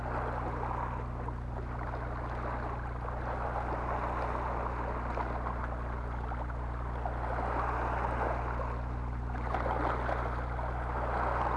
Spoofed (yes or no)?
no